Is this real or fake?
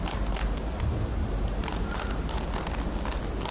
real